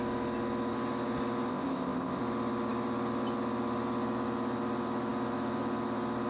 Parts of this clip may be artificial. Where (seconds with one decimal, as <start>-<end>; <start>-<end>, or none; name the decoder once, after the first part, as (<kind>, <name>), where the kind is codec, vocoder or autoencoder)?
1.5-2.2 (codec, ZipCodec)